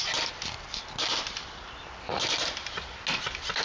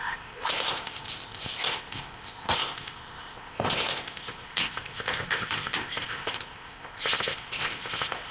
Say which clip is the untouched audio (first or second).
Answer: first